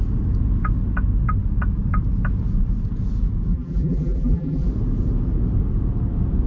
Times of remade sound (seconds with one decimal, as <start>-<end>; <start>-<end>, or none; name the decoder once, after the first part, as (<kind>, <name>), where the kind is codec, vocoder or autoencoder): 3.5-4.7 (vocoder, BigVGAN v2)